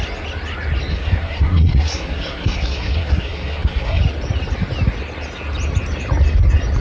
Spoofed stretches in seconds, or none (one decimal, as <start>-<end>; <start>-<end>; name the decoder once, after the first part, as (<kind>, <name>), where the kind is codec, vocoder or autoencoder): 0.9-4.0 (codec, SNAC)